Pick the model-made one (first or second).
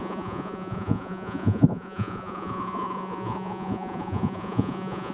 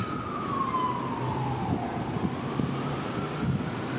first